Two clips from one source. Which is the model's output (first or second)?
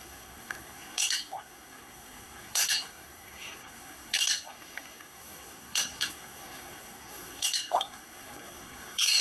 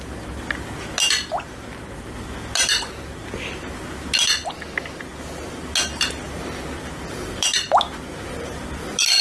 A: first